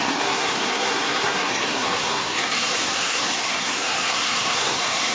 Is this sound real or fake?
fake